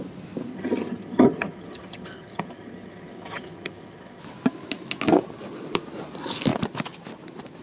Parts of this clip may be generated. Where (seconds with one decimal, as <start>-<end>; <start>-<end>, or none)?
0.5-4.2